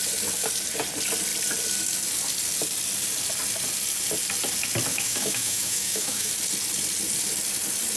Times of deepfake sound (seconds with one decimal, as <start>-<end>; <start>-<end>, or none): 4.9-6.3